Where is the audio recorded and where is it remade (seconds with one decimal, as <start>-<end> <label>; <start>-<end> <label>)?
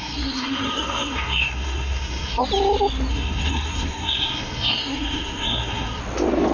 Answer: 0.0-2.4 remade; 2.4-3.1 recorded; 3.1-6.0 remade; 6.0-6.5 recorded